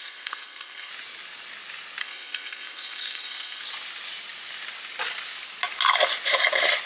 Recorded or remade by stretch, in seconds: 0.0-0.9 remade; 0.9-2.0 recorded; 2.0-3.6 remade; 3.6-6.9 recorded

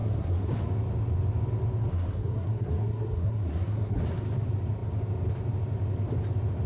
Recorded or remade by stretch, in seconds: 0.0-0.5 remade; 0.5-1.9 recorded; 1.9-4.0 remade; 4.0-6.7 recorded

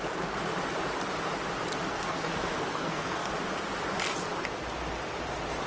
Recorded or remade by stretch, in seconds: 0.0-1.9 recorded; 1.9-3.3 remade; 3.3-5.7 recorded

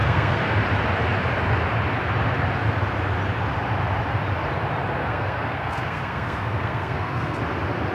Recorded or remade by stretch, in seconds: 0.0-0.6 remade; 0.6-5.0 recorded; 5.0-7.4 remade; 7.4-7.9 recorded

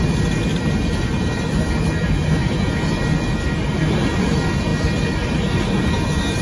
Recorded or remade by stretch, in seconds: 0.0-6.4 recorded

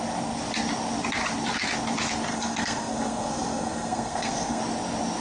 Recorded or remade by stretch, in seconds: 0.0-2.3 recorded; 2.3-4.6 remade; 4.6-5.2 recorded

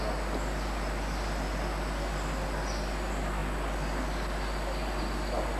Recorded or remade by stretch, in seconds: 0.0-5.6 recorded

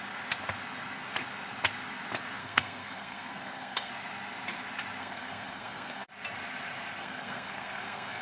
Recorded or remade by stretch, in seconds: 0.0-2.4 recorded; 2.4-3.9 remade; 3.9-5.0 recorded; 5.0-6.1 remade; 6.1-7.0 recorded; 7.0-8.2 remade